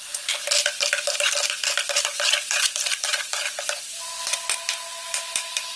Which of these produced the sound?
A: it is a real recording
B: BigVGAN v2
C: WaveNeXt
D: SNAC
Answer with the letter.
A